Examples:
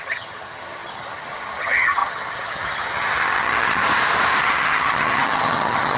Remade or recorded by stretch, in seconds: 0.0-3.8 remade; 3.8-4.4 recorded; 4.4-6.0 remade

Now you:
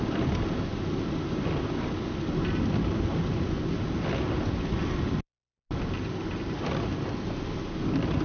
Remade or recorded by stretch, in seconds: 0.0-8.2 recorded

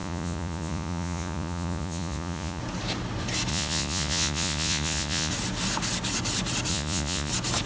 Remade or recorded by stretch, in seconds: 0.0-2.6 remade; 2.6-3.5 recorded; 3.5-5.3 remade; 5.3-6.7 recorded; 6.7-7.3 remade; 7.3-7.7 recorded

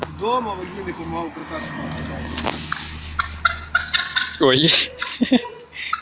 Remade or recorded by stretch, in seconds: 0.0-6.0 recorded

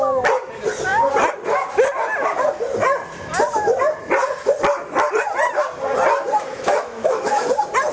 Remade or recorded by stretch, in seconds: 0.0-6.5 recorded; 6.5-7.5 remade; 7.5-7.9 recorded

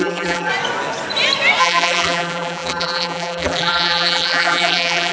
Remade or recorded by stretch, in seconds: 0.0-0.5 remade; 0.5-1.6 recorded; 1.6-5.1 remade

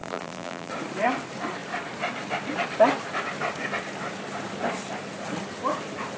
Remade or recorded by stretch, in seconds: 0.0-0.7 remade; 0.7-6.2 recorded